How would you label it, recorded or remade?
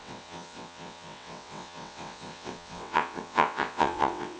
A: remade